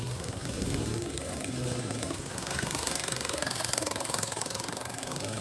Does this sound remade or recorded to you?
remade